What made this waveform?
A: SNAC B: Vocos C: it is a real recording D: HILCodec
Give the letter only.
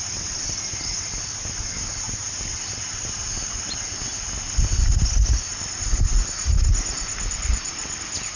C